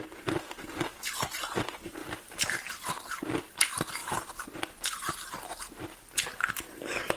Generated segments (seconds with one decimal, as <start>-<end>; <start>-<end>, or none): 2.0-2.7